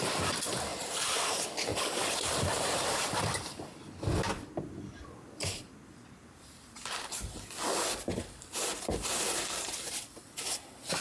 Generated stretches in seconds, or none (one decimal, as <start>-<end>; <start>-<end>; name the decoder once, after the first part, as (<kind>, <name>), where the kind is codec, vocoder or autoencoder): 0.7-1.2 (vocoder, BigVGAN v2); 1.7-3.2; 6.2-7.1